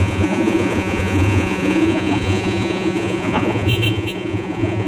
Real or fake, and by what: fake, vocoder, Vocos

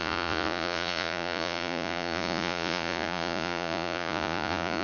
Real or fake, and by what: fake, vocoder, Vocos